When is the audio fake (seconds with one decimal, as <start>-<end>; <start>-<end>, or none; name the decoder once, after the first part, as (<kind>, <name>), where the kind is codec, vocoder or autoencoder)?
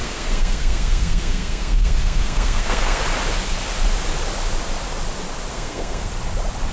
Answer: 0.0-3.0 (codec, SNAC); 5.5-6.1